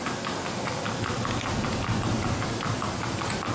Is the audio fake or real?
real